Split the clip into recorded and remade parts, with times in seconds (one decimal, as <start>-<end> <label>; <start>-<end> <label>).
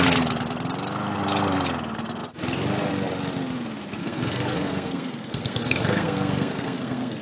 0.0-4.0 recorded; 4.0-7.2 remade